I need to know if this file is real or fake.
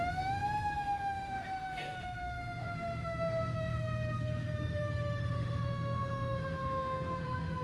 fake